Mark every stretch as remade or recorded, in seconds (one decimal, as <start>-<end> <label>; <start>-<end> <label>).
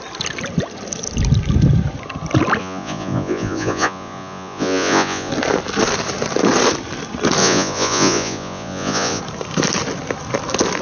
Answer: 0.0-2.6 recorded; 2.6-5.3 remade; 5.3-7.4 recorded; 7.4-9.2 remade; 9.2-10.8 recorded